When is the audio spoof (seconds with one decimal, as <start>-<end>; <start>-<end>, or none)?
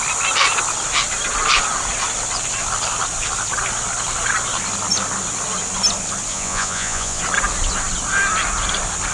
6.3-7.2